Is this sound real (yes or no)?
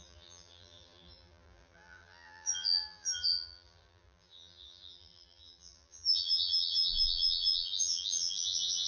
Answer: no